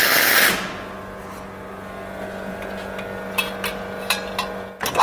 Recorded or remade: recorded